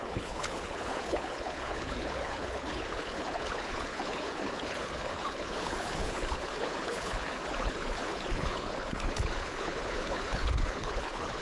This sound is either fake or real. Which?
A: fake